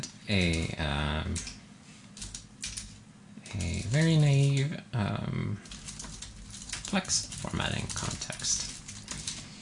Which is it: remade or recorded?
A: recorded